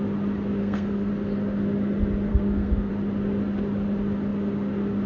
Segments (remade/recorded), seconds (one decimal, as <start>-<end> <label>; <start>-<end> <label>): 0.0-0.6 recorded; 0.6-1.1 remade; 1.1-2.3 recorded; 2.3-2.9 remade; 2.9-5.1 recorded